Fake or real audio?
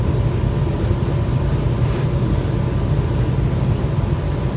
real